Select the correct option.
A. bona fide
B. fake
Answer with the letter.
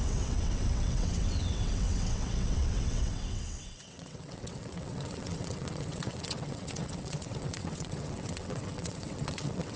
B